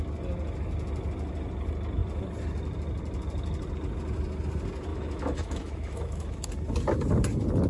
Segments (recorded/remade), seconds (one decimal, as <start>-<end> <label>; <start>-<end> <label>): 0.0-4.9 recorded; 4.9-6.5 remade; 6.5-7.7 recorded